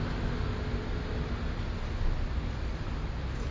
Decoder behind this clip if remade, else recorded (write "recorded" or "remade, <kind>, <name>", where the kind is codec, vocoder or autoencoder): recorded